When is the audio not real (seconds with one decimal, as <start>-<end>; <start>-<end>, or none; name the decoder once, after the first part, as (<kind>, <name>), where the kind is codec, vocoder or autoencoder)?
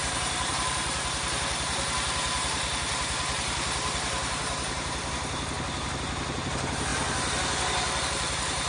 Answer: 0.0-6.9 (vocoder, BigVGAN v2); 8.0-8.7